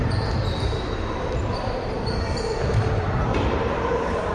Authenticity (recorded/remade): remade